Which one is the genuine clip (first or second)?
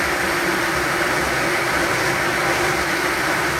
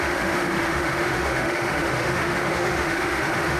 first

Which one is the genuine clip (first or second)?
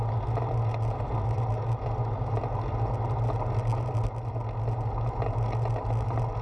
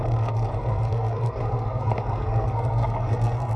first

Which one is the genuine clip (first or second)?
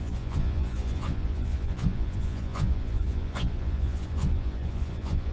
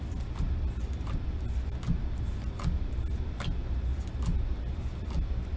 second